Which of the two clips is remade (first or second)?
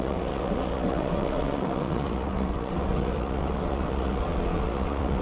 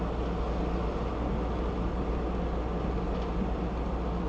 first